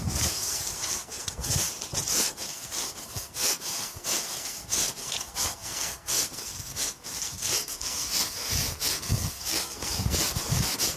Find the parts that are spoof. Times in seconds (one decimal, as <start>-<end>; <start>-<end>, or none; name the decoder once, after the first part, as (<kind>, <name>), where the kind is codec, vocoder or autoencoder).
0.0-1.6 (codec, SNAC); 2.1-11.0